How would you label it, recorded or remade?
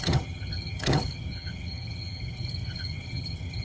remade